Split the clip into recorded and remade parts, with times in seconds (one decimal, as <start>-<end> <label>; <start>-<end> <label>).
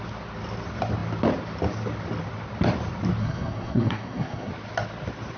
0.0-3.2 recorded; 3.2-4.5 remade; 4.5-5.4 recorded